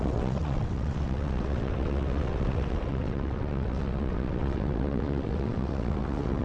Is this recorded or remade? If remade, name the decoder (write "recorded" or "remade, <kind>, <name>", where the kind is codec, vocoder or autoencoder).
remade, vocoder, WaveNeXt